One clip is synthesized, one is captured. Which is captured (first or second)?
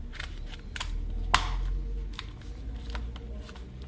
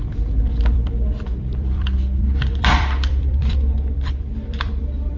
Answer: first